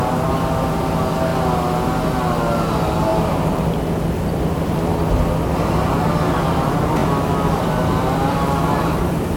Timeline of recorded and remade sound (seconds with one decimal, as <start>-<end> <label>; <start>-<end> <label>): 0.0-3.1 recorded; 3.1-5.2 remade; 5.2-7.0 recorded; 7.0-9.4 remade